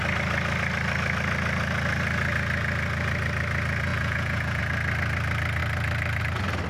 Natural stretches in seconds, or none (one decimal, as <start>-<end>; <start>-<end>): 0.0-3.9; 4.6-6.7